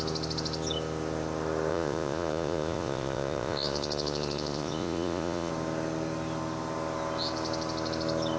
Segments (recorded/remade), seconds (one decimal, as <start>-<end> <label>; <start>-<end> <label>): 0.0-1.7 recorded; 1.7-5.5 remade; 5.5-8.4 recorded